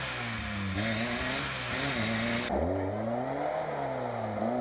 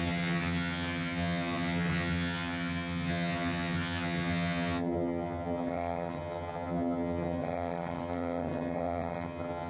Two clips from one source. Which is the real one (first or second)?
first